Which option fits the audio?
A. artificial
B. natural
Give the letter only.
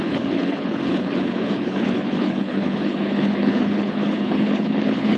A